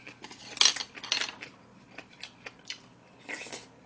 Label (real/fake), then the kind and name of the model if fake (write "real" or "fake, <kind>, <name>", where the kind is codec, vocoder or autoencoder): real